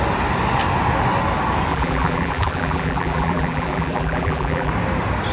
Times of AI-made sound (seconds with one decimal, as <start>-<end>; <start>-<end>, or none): 1.7-4.7